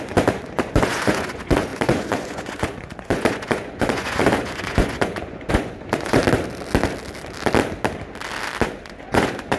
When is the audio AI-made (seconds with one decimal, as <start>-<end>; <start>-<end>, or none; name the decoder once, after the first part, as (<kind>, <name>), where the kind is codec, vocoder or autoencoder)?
0.0-6.2 (vocoder, Vocos); 8.8-9.6